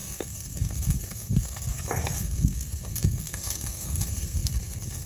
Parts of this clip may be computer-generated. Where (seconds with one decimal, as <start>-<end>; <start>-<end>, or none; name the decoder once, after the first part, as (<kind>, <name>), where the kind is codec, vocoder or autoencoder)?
0.0-5.1 (codec, SNAC)